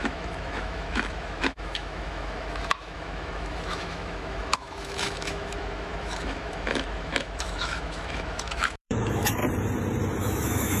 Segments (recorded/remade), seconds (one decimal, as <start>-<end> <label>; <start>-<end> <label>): 0.0-9.4 remade; 9.4-10.2 recorded; 10.2-10.8 remade